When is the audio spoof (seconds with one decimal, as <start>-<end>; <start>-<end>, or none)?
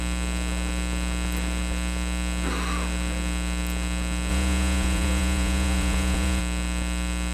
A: 4.3-6.4